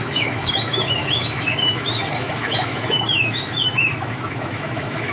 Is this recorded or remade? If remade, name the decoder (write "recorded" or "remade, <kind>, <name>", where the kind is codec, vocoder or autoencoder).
remade, autoencoder, DAC-VAE